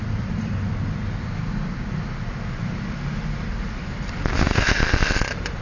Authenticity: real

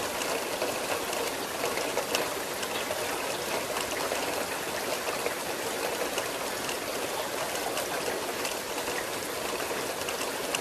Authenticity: real